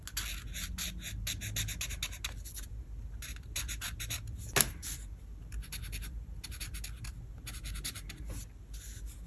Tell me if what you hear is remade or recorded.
recorded